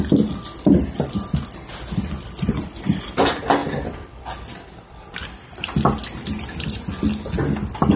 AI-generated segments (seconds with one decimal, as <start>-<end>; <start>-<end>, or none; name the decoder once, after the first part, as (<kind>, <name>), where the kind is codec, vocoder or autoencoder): none